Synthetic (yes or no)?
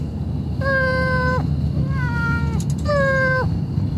no